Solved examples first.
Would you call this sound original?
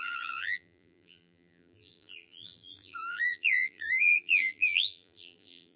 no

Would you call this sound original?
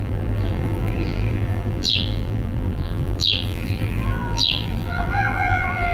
no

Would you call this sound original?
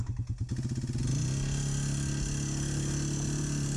yes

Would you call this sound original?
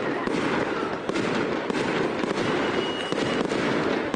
yes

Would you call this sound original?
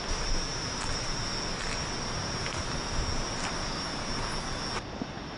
yes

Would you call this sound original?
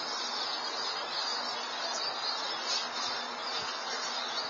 yes